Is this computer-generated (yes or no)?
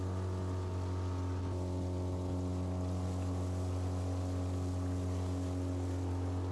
no